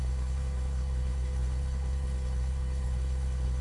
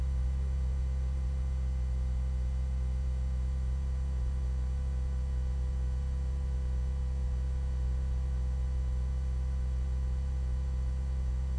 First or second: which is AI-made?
first